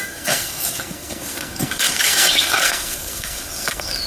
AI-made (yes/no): yes